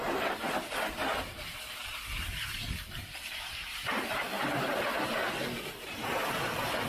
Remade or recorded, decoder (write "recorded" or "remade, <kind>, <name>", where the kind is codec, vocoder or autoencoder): remade, vocoder, BigVGAN v2